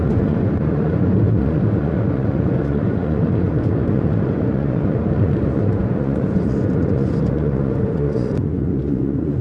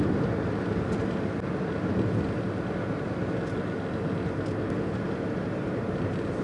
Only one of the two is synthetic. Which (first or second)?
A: first